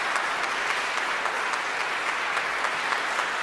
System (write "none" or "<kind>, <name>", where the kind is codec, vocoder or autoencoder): none